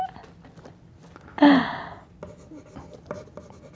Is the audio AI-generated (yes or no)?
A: no